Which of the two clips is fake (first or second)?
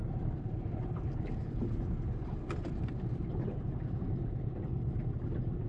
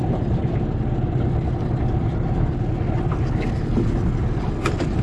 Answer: first